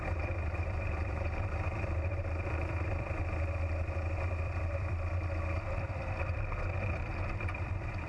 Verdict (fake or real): fake